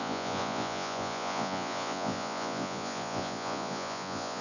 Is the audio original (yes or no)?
no